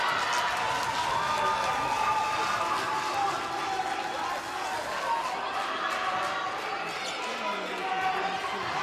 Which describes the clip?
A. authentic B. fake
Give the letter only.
A